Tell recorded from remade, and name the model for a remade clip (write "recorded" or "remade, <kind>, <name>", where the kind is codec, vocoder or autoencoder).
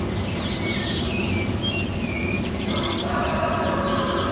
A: recorded